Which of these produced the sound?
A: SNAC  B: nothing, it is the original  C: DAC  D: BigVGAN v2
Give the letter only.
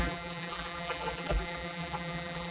D